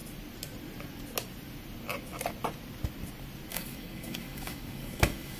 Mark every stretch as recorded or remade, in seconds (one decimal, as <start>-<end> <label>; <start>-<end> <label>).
0.0-3.5 recorded; 3.5-5.4 remade